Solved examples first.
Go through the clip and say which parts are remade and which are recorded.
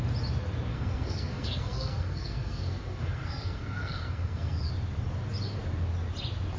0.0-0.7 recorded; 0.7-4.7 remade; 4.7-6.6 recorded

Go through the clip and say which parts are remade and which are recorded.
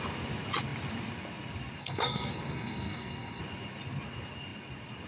0.0-1.8 recorded; 1.8-3.4 remade; 3.4-5.1 recorded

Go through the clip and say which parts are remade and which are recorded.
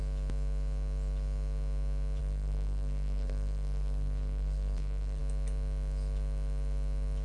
0.0-2.2 recorded; 2.2-5.2 remade; 5.2-7.2 recorded